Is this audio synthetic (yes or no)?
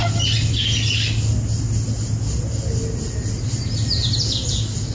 no